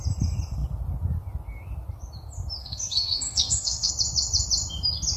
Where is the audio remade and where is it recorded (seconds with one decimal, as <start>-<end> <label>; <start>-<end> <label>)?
0.0-2.6 recorded; 2.6-3.9 remade; 3.9-5.2 recorded